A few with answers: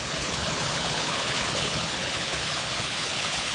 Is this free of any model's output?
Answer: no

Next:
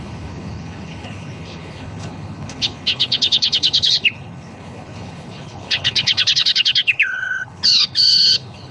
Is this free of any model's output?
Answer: no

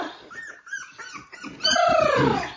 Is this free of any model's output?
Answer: yes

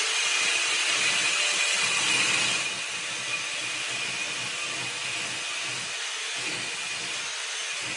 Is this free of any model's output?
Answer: yes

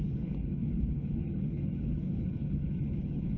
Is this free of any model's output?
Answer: no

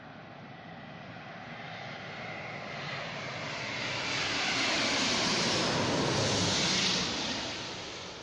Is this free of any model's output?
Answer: yes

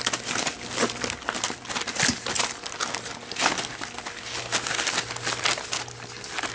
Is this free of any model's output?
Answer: yes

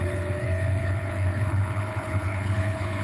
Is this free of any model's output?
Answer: no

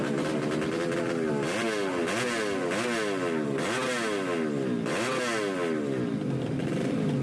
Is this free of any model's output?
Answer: yes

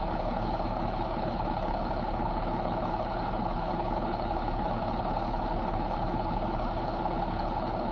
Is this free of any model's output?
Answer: no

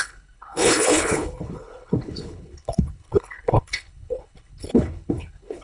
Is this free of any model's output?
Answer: no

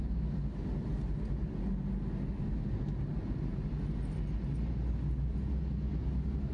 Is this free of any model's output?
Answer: yes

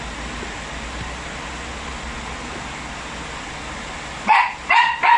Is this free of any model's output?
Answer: yes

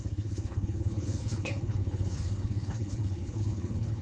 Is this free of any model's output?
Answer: no